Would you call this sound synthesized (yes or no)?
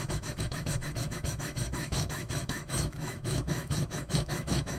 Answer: yes